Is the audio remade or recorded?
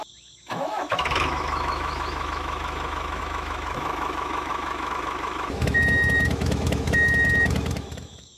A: remade